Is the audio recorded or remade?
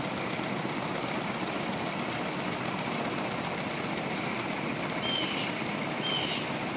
recorded